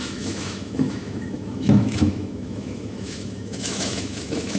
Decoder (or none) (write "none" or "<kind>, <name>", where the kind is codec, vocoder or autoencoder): autoencoder, DAC-VAE